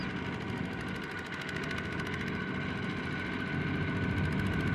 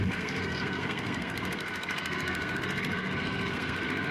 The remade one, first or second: second